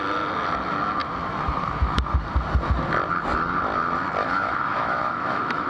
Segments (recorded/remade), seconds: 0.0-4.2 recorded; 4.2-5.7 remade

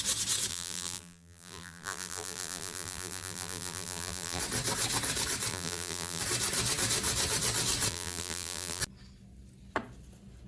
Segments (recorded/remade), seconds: 0.0-0.5 recorded; 0.5-4.4 remade; 4.4-5.5 recorded; 5.5-6.2 remade; 6.2-7.9 recorded; 7.9-8.8 remade; 8.8-10.5 recorded

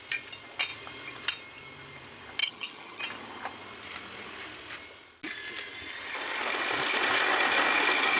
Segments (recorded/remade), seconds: 0.0-2.4 recorded; 2.4-3.0 remade; 3.0-8.2 recorded

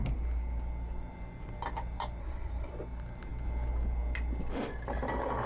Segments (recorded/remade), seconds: 0.0-2.2 recorded; 2.2-2.7 remade; 2.7-5.5 recorded

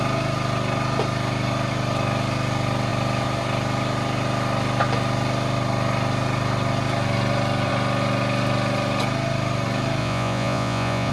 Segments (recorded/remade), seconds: 0.0-10.0 recorded; 10.0-11.1 remade

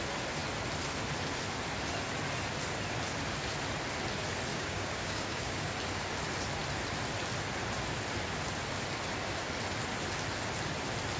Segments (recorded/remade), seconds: 0.0-4.5 recorded; 4.5-5.7 remade; 5.7-11.2 recorded

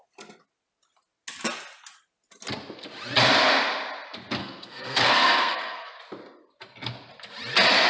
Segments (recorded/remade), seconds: 0.0-4.4 recorded; 4.4-6.0 remade; 6.0-7.9 recorded

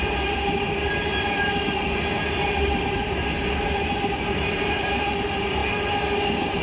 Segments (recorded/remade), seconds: 0.0-6.6 recorded